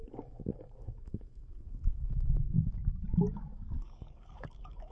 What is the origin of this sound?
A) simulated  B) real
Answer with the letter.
A